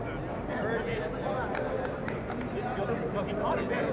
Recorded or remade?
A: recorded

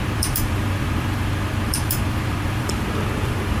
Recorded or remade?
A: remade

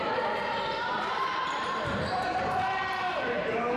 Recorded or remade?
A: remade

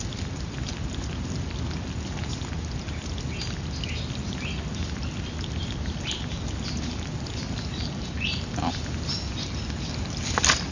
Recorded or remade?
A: recorded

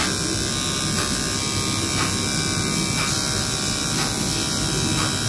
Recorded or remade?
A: recorded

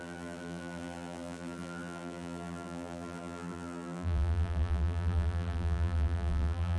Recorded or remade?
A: remade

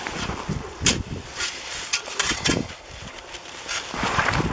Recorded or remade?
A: remade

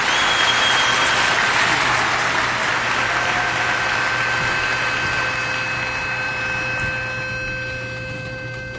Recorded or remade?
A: recorded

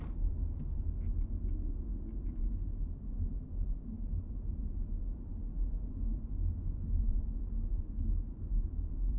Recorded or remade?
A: recorded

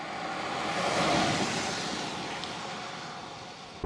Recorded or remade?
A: recorded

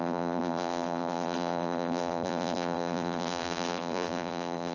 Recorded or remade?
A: remade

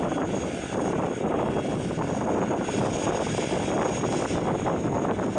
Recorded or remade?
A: remade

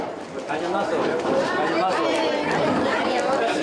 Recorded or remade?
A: remade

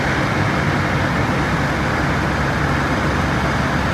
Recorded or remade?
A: recorded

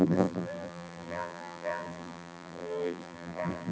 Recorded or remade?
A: remade